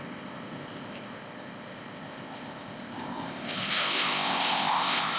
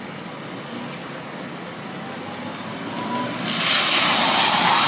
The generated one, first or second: first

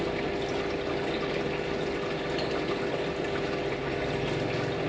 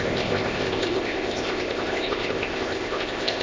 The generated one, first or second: second